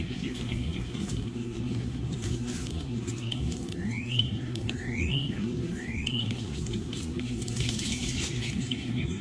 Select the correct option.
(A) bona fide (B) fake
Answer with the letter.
B